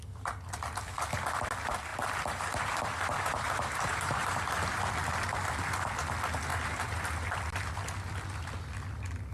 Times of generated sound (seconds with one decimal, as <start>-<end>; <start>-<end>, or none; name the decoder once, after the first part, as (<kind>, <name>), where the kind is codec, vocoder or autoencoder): 1.9-4.8 (vocoder, BigVGAN v2); 6.5-7.4